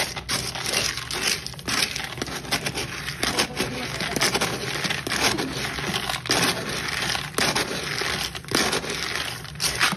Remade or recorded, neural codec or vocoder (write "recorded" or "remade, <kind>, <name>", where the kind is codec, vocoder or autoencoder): recorded